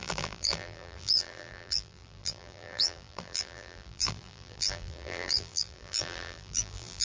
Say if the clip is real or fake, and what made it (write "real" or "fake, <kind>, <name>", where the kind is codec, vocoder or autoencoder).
fake, vocoder, BigVGAN v2